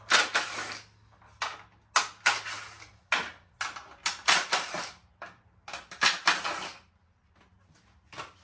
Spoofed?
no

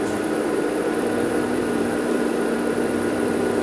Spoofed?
yes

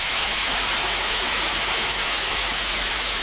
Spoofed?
yes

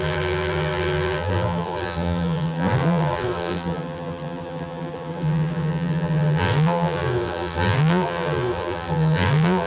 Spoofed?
yes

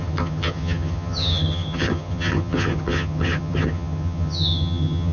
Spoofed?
yes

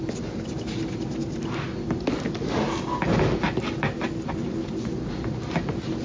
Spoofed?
no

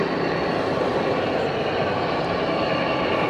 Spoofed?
no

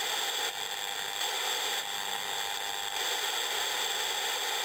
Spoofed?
yes